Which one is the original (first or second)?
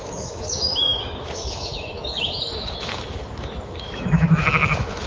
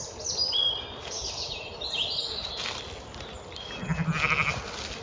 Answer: second